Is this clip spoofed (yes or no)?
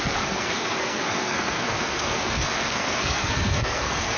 yes